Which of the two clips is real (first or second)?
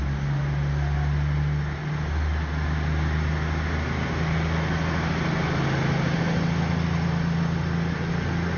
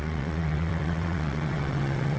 first